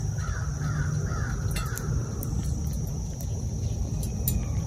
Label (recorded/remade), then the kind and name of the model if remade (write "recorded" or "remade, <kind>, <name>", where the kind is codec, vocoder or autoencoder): recorded